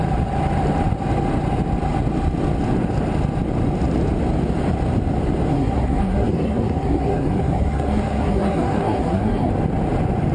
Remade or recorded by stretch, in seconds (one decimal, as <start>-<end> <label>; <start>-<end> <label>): 0.0-5.5 recorded; 5.5-9.5 remade; 9.5-10.3 recorded